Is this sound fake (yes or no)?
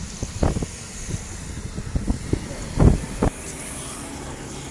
no